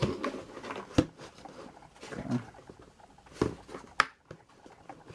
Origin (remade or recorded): recorded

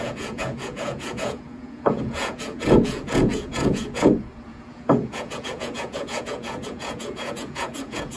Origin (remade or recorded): remade